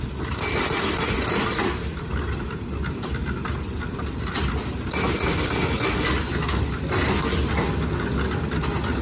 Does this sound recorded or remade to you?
recorded